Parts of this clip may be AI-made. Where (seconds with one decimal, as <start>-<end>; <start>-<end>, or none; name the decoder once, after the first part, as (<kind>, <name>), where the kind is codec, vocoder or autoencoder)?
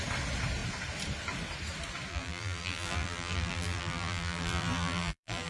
2.1-5.5 (vocoder, BigVGAN v2)